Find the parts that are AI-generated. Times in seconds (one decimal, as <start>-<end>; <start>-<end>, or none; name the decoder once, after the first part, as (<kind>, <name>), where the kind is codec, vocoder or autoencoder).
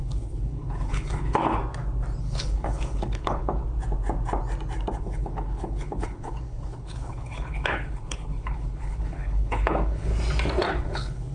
0.0-1.6 (codec, HILCodec); 2.2-3.6; 5.0-10.1; 10.7-11.3